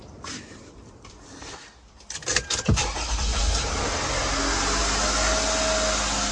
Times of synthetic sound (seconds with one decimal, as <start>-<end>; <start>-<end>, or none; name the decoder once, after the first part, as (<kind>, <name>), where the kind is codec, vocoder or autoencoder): 0.0-4.2 (vocoder, BigVGAN v2)